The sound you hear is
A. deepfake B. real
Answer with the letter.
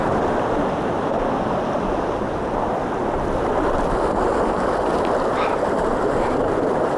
B